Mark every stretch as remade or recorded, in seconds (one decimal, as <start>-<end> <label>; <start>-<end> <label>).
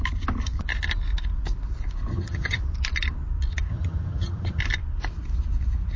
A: 0.0-2.1 recorded; 2.1-2.6 remade; 2.6-3.7 recorded; 3.7-4.6 remade; 4.6-6.0 recorded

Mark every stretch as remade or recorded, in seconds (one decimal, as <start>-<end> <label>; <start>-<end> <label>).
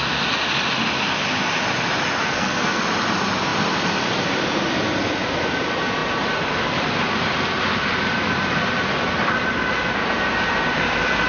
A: 0.0-2.2 recorded; 2.2-2.8 remade; 2.8-11.3 recorded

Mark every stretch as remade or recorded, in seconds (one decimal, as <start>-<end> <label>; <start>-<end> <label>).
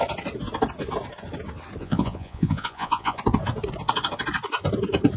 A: 0.0-1.8 recorded; 1.8-3.2 remade; 3.2-5.2 recorded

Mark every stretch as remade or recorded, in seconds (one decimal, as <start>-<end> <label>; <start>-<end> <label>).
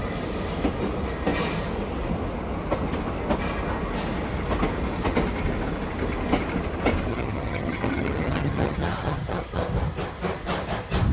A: 0.0-7.1 recorded; 7.1-9.6 remade; 9.6-11.1 recorded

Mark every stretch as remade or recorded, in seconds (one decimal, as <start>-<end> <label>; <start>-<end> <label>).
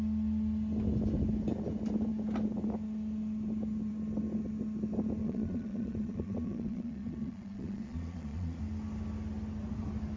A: 0.0-5.2 recorded; 5.2-8.6 remade; 8.6-10.2 recorded